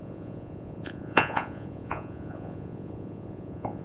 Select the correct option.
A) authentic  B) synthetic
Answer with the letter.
B